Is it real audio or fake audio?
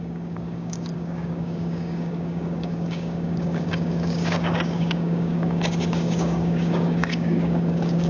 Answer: fake